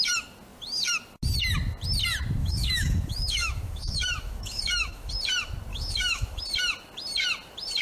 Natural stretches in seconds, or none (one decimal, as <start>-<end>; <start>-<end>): 0.0-2.4; 5.1-5.7; 6.4-7.8